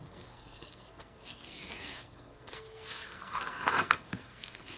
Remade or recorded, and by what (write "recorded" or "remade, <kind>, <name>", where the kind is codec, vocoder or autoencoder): remade, codec, SNAC